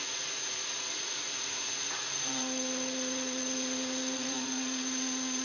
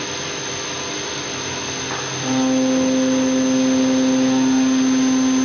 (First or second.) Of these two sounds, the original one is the second